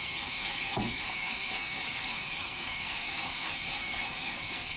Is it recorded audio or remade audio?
remade